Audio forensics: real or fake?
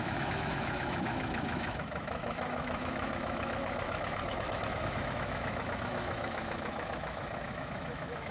fake